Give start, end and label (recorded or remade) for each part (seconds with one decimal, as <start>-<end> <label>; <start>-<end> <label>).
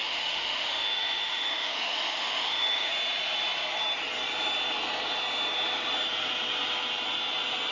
0.0-2.9 remade; 2.9-7.7 recorded